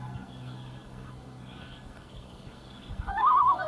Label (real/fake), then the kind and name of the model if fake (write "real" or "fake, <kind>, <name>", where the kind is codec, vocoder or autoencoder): fake, codec, SNAC